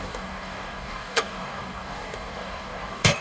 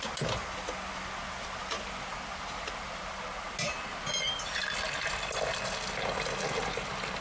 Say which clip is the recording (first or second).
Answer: second